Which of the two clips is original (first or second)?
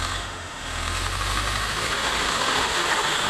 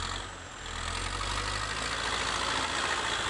second